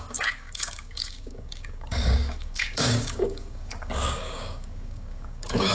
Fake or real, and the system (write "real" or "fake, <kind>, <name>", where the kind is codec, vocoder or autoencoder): fake, codec, DAC